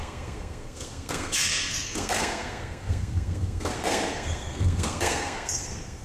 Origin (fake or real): fake